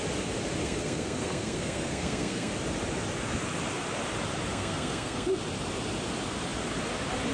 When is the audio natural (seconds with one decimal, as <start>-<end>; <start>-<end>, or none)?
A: 0.0-0.6; 2.5-4.5; 5.4-7.3